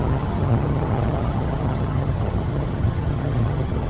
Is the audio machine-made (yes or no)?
yes